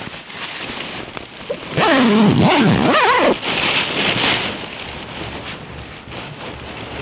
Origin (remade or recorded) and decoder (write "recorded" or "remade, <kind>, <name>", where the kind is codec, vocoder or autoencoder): recorded